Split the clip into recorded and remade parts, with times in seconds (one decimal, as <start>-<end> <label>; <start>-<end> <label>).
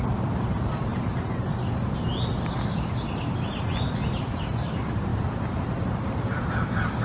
0.0-7.0 recorded